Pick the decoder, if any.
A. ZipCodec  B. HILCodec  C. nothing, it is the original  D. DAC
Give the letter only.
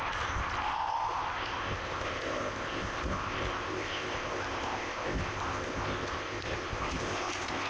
A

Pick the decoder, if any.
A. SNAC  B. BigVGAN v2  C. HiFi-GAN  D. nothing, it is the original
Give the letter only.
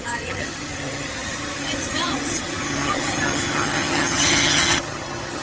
C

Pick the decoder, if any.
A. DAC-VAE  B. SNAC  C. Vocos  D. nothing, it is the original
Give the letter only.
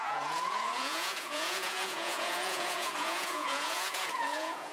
C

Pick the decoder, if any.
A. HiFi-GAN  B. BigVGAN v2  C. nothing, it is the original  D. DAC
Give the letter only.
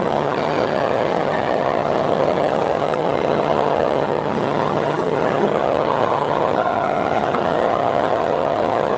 A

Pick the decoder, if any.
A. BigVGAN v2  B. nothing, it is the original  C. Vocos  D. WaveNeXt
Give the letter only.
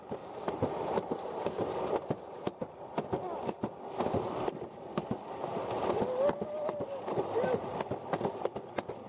B